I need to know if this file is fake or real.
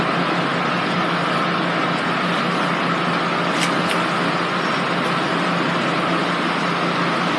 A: real